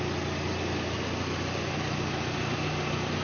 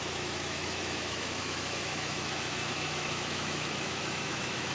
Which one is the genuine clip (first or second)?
first